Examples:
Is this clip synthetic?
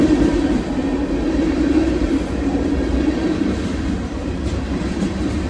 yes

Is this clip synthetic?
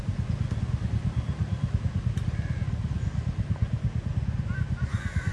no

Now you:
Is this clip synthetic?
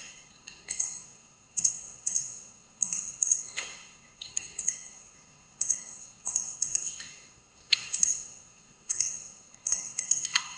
yes